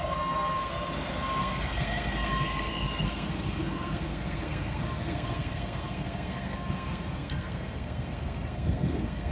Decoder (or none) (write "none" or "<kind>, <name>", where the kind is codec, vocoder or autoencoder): codec, SNAC